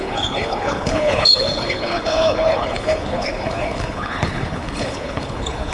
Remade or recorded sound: remade